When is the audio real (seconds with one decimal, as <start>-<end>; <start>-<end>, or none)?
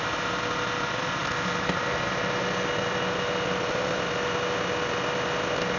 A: 0.0-5.8